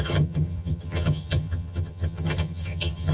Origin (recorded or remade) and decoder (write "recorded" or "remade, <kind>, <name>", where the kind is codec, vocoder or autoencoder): remade, vocoder, HiFi-GAN